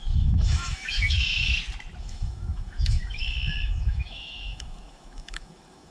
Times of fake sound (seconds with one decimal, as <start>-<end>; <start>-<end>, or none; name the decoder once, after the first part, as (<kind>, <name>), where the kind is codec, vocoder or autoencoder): 0.0-1.5 (autoencoder, DAC-VAE); 2.0-5.9